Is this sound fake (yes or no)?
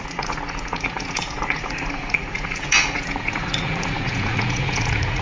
yes